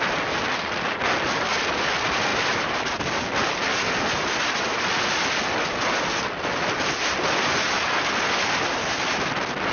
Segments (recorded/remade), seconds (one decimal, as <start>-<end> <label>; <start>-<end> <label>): 0.0-2.3 recorded; 2.3-3.0 remade; 3.0-9.7 recorded